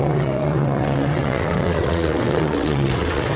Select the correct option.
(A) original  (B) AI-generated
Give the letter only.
B